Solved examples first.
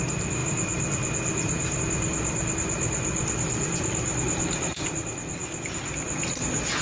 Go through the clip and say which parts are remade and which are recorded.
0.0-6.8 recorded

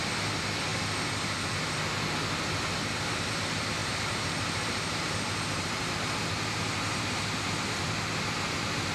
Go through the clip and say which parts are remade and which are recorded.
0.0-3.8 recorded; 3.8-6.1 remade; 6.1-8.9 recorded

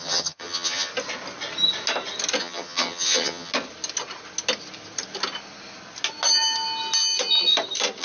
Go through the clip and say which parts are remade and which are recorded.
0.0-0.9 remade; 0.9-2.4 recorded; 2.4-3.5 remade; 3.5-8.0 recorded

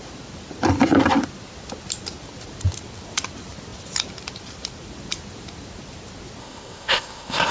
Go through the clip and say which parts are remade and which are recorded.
0.0-6.4 recorded; 6.4-7.5 remade

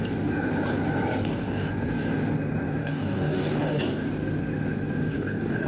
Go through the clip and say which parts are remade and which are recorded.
0.0-1.2 recorded; 1.2-1.7 remade; 1.7-2.8 recorded; 2.8-3.8 remade; 3.8-5.1 recorded; 5.1-5.7 remade

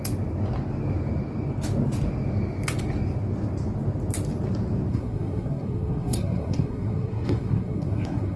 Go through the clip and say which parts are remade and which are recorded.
0.0-4.9 recorded; 4.9-8.4 remade

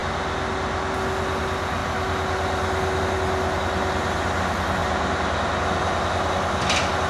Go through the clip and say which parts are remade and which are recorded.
0.0-4.8 recorded; 4.8-5.6 remade; 5.6-7.1 recorded

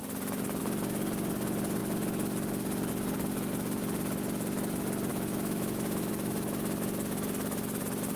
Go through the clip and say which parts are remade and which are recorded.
0.0-5.1 recorded; 5.1-6.1 remade; 6.1-8.2 recorded